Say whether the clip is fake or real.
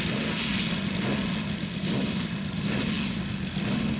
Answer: real